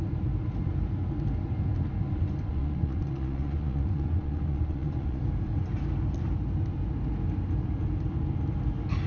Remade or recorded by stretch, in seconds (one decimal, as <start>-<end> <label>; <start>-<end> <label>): 0.0-2.5 recorded; 2.5-5.2 remade; 5.2-9.1 recorded